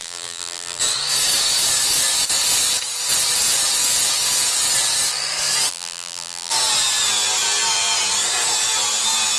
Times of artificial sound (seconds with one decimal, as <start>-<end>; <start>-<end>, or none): 0.0-0.8; 5.7-6.5